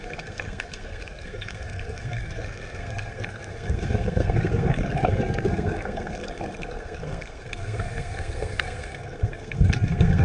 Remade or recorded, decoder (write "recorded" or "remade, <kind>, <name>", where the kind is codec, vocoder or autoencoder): remade, codec, SNAC